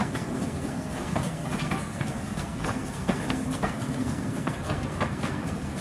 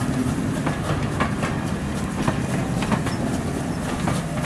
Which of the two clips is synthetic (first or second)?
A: first